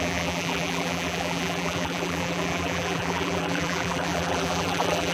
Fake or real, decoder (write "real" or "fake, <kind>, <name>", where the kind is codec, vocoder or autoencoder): fake, vocoder, BigVGAN v2